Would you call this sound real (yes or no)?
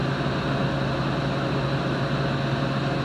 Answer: yes